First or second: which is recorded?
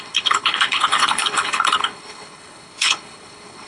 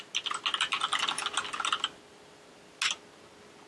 second